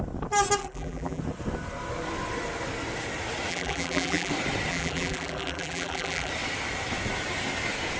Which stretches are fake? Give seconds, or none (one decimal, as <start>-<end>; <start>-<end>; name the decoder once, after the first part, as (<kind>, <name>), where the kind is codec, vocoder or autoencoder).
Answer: 0.6-1.2 (vocoder, BigVGAN v2); 3.5-4.3; 4.7-6.3